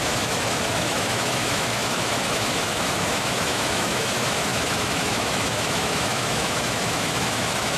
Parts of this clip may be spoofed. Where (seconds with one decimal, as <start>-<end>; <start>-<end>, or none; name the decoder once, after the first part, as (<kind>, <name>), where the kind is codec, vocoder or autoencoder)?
0.0-7.8 (autoencoder, DAC-VAE)